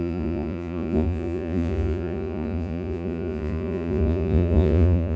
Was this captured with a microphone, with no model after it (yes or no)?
no